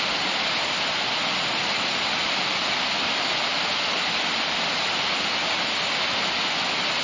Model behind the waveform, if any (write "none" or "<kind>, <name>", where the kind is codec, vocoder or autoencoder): none